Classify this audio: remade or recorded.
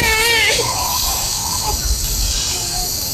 remade